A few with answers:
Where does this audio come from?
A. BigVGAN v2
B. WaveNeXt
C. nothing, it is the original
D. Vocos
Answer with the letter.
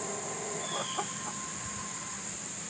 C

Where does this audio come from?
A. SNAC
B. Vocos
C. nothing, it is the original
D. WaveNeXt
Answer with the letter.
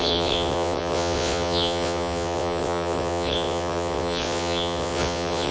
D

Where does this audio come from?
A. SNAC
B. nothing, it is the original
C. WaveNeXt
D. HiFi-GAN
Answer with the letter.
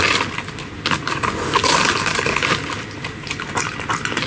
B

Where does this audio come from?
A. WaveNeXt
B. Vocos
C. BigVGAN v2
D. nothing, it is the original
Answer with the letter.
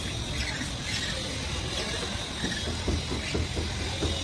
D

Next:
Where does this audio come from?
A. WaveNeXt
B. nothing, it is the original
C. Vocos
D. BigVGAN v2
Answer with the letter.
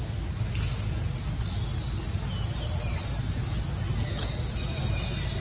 B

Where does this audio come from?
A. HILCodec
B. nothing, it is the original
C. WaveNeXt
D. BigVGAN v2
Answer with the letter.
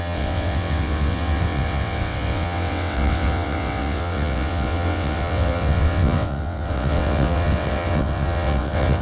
C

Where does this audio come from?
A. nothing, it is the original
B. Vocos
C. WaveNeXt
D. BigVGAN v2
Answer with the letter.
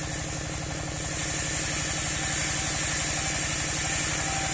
A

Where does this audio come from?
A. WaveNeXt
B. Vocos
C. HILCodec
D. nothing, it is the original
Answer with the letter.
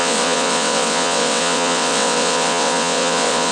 A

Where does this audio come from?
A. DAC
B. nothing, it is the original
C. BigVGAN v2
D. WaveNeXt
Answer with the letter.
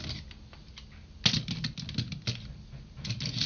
B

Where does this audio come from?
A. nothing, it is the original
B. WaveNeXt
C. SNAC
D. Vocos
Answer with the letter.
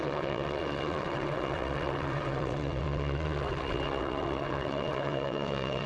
B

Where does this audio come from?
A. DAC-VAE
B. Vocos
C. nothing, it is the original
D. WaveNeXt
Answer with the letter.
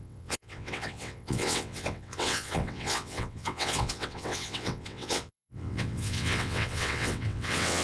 D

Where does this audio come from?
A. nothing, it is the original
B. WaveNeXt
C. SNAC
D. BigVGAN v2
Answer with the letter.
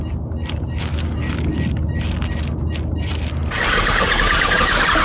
A